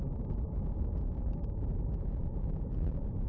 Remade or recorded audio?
remade